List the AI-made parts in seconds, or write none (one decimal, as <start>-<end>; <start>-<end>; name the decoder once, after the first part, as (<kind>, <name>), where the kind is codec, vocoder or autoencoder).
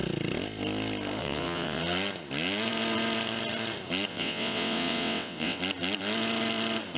1.2-1.8 (vocoder, WaveNeXt); 4.1-5.6